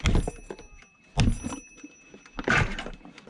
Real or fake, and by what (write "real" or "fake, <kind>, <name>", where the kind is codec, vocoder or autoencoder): real